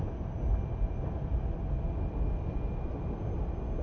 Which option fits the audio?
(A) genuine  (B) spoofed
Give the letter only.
A